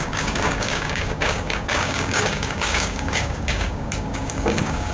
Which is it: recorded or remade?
remade